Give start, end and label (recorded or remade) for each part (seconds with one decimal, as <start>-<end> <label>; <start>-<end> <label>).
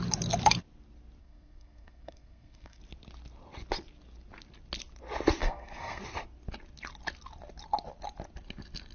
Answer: 0.0-1.2 recorded; 1.2-2.8 remade; 2.8-5.4 recorded; 5.4-6.0 remade; 6.0-8.9 recorded